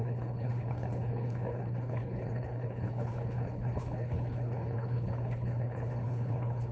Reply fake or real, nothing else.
fake